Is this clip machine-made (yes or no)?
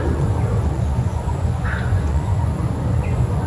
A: yes